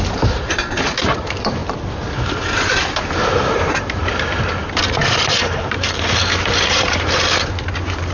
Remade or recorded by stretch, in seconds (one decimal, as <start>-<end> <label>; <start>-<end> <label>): 0.0-1.6 remade; 1.6-2.9 recorded; 2.9-4.0 remade; 4.0-4.6 recorded; 4.6-8.1 remade